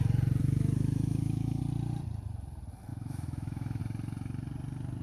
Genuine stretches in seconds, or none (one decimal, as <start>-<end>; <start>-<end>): 0.0-0.4; 1.6-2.9; 3.8-5.0